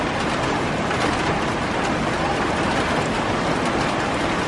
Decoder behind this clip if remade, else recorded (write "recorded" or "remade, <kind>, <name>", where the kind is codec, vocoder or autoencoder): recorded